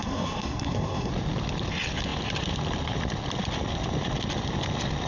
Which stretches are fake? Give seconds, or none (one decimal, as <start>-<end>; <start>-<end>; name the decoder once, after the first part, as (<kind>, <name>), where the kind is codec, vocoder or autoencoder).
0.0-1.1 (codec, SNAC)